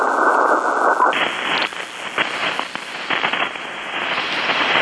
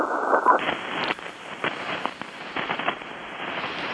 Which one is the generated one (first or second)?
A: second